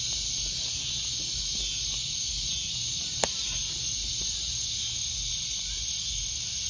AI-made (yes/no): no